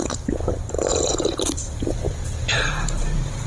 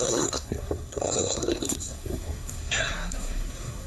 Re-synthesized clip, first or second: second